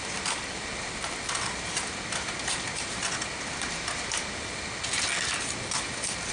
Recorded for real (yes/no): yes